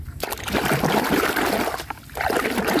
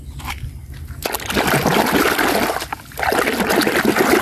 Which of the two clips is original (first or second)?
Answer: second